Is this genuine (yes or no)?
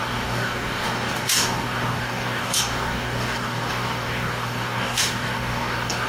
no